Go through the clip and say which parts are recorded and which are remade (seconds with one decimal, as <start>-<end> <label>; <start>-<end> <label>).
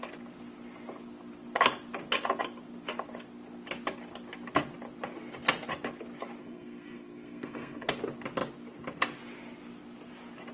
0.0-6.4 recorded; 6.4-7.9 remade; 7.9-10.5 recorded